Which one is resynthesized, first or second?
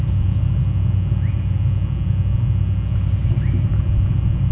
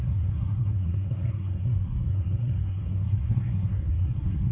second